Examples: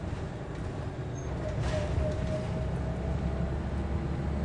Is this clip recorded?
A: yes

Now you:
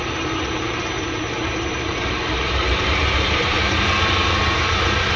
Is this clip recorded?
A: no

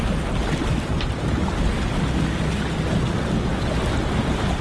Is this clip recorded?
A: yes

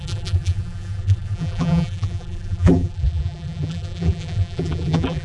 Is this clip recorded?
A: no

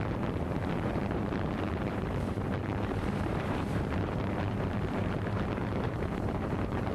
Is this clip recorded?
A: no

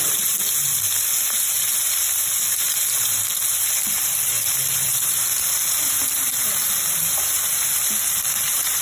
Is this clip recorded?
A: no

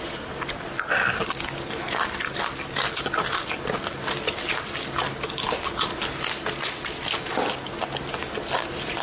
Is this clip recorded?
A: yes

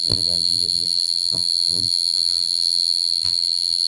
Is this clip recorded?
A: no